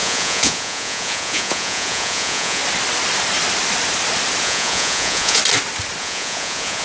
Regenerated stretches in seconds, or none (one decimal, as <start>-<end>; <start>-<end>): 0.0-2.6; 4.4-5.4; 6.0-6.8